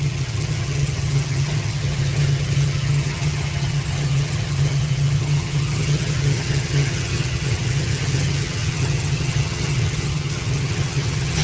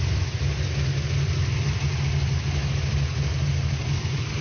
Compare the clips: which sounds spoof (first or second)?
first